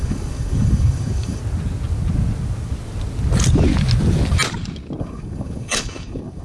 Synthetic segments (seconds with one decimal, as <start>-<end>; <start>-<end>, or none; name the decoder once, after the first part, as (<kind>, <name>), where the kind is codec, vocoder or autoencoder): 0.0-1.4 (codec, DAC); 5.0-6.4